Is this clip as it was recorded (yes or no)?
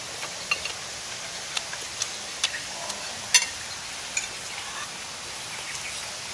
yes